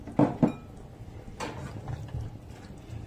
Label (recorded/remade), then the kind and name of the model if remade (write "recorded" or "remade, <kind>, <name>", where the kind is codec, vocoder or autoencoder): recorded